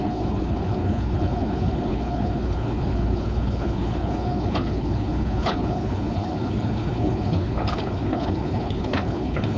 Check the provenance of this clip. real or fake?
fake